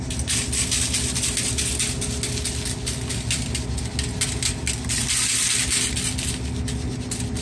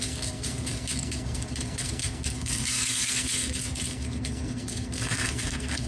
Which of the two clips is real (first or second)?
first